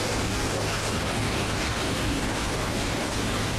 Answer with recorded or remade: remade